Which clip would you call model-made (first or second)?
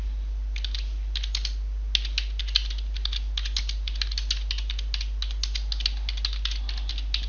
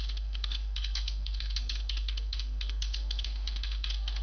second